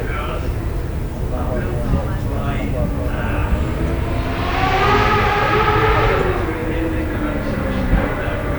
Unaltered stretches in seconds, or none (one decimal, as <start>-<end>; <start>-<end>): 0.0-8.6